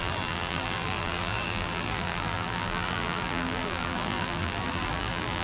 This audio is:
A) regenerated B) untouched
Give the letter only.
A